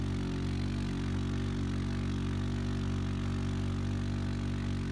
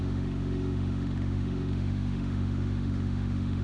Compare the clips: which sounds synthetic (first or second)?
second